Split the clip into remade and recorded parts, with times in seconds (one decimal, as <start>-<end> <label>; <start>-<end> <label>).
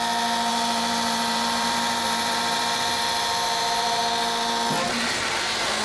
0.0-0.5 recorded; 0.5-4.0 remade; 4.0-5.8 recorded